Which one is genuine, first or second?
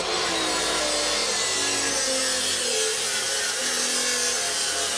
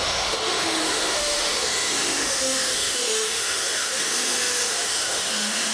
first